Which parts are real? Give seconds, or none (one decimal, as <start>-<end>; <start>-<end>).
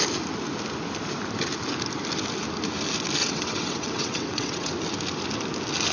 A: 0.0-3.2; 4.7-5.9